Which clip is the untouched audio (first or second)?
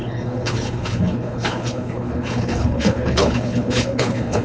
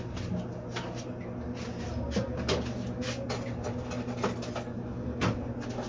second